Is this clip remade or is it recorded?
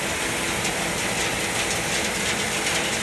recorded